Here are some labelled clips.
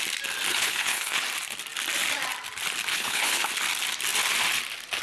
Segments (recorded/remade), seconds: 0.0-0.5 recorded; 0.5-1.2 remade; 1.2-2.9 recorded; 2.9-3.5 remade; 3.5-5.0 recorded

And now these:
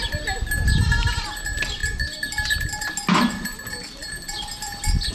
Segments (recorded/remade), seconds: 0.0-5.1 recorded

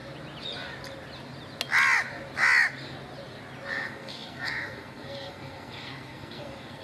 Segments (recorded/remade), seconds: 0.0-3.7 recorded; 3.7-6.8 remade